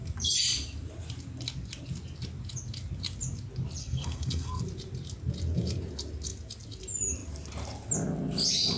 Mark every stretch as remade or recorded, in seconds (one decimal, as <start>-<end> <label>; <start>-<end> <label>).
0.0-3.8 recorded; 3.8-4.6 remade; 4.6-8.8 recorded